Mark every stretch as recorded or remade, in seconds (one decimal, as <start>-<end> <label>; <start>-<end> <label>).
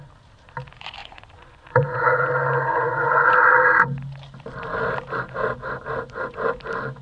0.0-1.0 recorded; 1.0-2.3 remade; 2.3-2.7 recorded; 2.7-3.3 remade; 3.3-7.0 recorded